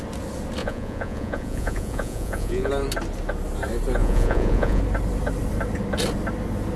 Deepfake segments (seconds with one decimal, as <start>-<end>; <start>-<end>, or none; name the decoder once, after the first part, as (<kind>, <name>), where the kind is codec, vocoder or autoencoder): 0.6-2.7 (vocoder, Vocos); 4.0-4.8